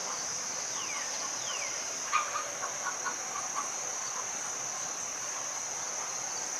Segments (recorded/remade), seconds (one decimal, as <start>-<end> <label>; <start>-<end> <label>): 0.0-0.8 remade; 0.8-6.6 recorded